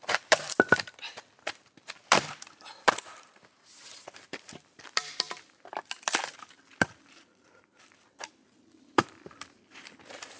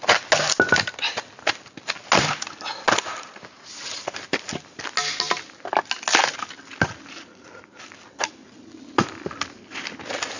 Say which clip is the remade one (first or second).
first